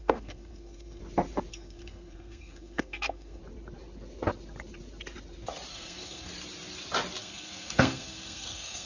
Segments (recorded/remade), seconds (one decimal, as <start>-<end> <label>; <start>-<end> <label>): 0.0-1.0 remade; 1.0-1.5 recorded; 1.5-3.4 remade; 3.4-5.7 recorded; 5.7-6.3 remade; 6.3-7.2 recorded; 7.2-8.9 remade